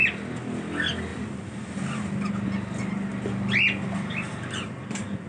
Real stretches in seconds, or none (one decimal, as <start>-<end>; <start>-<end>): 0.0-5.3